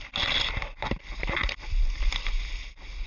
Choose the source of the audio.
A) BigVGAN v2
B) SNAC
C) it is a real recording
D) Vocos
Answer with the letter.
A